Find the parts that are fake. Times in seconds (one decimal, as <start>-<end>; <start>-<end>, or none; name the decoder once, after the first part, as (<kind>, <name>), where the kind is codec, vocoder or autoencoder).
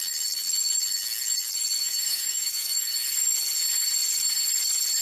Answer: 1.8-2.8 (autoencoder, DAC-VAE)